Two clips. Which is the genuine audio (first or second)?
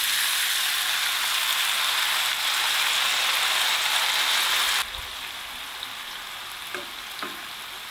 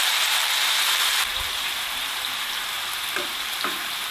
first